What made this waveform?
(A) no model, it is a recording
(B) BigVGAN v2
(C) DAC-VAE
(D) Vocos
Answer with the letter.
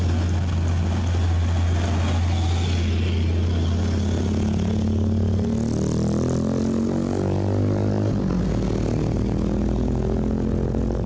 A